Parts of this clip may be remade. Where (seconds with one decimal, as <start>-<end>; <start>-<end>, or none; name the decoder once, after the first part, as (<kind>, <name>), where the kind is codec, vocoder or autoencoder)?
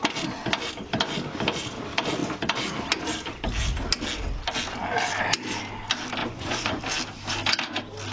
6.2-6.8 (vocoder, Vocos)